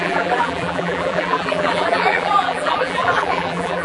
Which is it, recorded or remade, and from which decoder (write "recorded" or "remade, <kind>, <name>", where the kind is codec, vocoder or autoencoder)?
remade, vocoder, BigVGAN v2